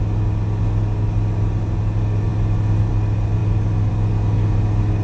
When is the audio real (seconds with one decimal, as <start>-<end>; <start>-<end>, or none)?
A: 0.0-5.0